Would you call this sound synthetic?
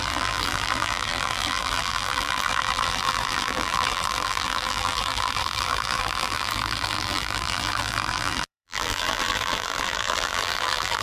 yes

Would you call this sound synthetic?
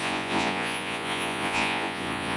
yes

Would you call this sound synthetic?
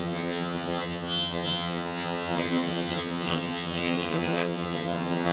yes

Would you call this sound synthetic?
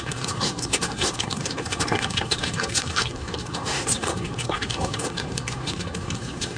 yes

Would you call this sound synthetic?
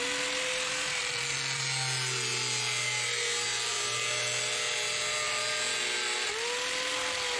no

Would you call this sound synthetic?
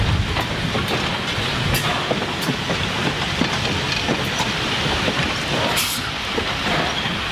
no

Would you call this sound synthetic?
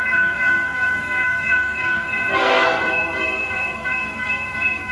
yes